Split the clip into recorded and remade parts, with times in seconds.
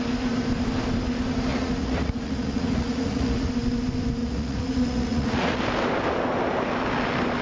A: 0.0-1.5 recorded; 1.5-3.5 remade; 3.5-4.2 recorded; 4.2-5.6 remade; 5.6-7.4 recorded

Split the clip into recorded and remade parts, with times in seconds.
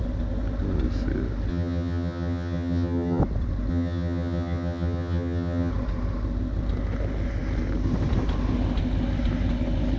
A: 0.0-1.5 recorded; 1.5-3.2 remade; 3.2-3.7 recorded; 3.7-5.7 remade; 5.7-10.0 recorded